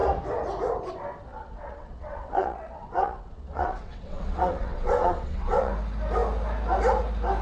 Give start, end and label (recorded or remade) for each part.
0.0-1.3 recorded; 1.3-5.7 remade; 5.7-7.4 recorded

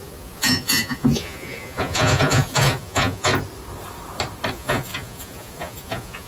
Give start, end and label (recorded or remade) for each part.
0.0-3.3 remade; 3.3-4.5 recorded; 4.5-6.3 remade

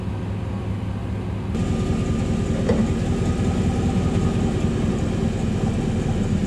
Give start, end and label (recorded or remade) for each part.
0.0-6.5 recorded

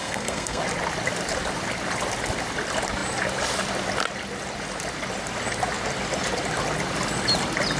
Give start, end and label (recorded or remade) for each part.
0.0-0.6 remade; 0.6-7.8 recorded

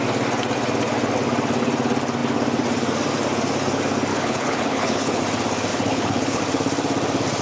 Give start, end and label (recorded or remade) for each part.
0.0-4.1 recorded; 4.1-5.2 remade; 5.2-5.7 recorded; 5.7-6.4 remade; 6.4-7.4 recorded